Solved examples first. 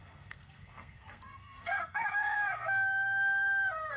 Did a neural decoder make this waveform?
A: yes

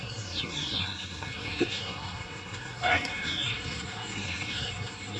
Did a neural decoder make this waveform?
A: yes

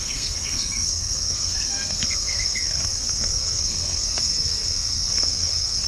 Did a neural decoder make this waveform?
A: yes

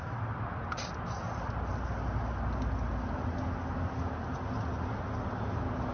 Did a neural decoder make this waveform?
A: no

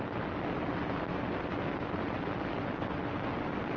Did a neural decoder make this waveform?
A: no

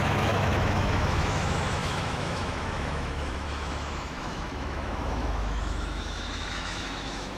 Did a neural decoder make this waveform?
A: yes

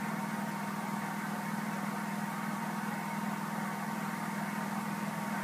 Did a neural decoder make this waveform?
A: no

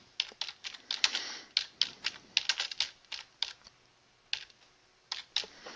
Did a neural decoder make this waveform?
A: no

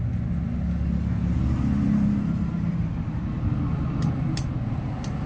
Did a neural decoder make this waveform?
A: no